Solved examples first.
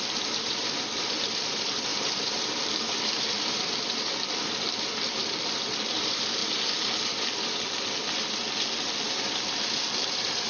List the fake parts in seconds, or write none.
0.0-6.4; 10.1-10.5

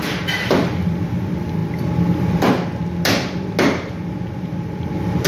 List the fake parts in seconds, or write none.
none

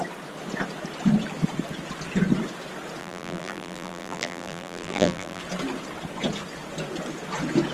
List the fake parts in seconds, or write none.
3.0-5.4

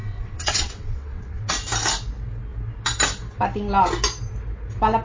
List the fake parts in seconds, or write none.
0.0-1.5

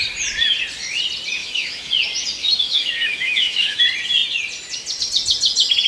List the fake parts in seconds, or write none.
1.4-1.9; 2.4-3.8

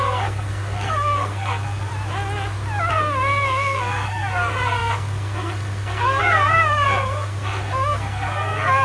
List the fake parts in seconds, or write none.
0.0-1.9; 2.9-8.8

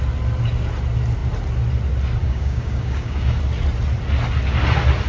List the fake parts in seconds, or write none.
2.2-3.4